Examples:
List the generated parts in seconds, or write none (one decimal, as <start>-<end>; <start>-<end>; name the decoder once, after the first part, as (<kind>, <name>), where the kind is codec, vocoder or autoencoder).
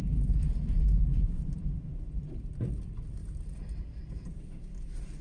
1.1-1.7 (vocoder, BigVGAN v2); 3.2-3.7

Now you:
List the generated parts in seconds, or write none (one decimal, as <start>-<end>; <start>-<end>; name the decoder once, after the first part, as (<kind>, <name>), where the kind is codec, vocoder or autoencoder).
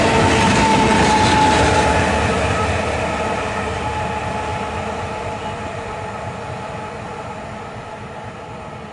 0.7-1.2 (vocoder, BigVGAN v2)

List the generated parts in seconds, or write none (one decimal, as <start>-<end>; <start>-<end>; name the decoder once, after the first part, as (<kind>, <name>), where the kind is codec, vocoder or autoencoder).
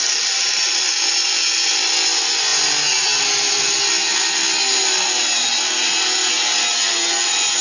none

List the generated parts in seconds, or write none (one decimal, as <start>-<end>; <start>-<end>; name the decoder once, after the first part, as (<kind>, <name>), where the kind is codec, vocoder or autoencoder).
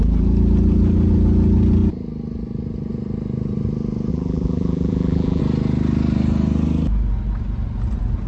4.1-5.4 (vocoder, BigVGAN v2)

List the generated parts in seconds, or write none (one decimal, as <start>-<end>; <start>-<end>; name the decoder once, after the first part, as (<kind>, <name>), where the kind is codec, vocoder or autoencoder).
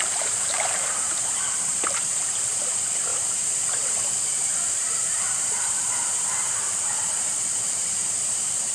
0.0-8.7 (vocoder, BigVGAN v2)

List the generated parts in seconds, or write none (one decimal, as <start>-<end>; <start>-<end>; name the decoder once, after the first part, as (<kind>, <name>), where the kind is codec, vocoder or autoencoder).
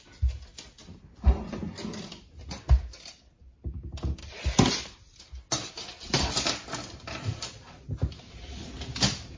4.2-5.2 (vocoder, BigVGAN v2)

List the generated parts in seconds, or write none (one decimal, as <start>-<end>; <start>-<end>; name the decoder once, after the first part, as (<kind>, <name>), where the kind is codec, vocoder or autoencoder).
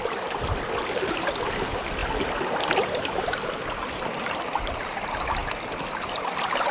0.0-5.4 (vocoder, BigVGAN v2); 5.9-6.7